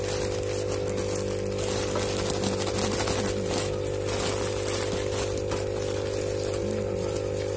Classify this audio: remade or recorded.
recorded